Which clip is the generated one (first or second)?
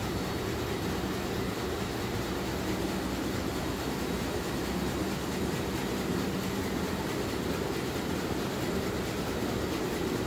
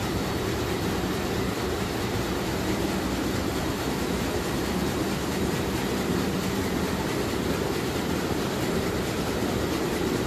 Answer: second